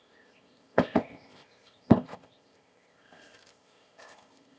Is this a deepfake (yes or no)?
yes